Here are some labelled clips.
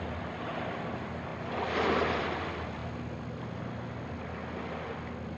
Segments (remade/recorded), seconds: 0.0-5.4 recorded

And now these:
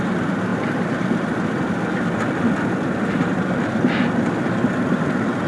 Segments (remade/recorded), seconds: 0.0-5.5 recorded

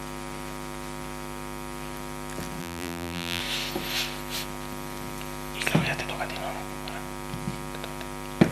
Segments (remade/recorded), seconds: 0.0-2.6 recorded; 2.6-3.4 remade; 3.4-8.5 recorded

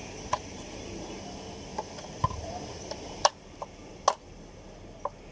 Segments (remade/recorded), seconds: 0.0-1.2 remade; 1.2-1.7 recorded; 1.7-3.3 remade; 3.3-5.3 recorded

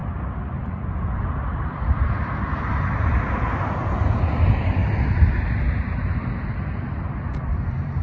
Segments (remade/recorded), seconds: 0.0-2.2 remade; 2.2-8.0 recorded

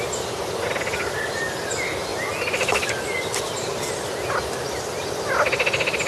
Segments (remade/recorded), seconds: 0.0-6.1 recorded

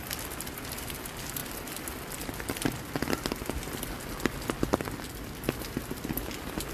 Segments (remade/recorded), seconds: 0.0-6.7 recorded